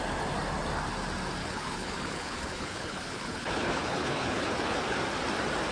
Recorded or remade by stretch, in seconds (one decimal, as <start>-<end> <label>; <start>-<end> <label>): 0.0-1.4 recorded; 1.4-4.8 remade; 4.8-5.7 recorded